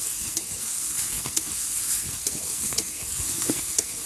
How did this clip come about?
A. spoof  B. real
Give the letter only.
A